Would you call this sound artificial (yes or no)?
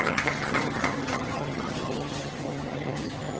yes